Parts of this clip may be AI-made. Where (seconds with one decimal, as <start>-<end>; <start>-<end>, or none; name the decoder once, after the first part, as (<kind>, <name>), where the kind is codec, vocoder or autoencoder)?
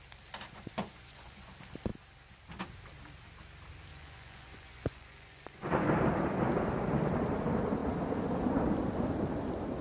0.5-1.5 (vocoder, Vocos); 3.9-5.9